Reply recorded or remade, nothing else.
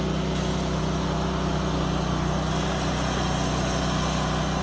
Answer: recorded